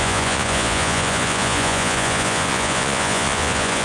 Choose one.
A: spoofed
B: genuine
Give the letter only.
A